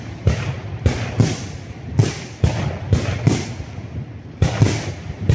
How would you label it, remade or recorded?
recorded